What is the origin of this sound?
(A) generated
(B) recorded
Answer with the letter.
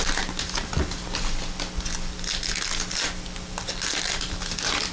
B